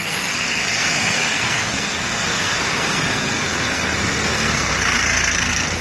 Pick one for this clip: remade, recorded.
remade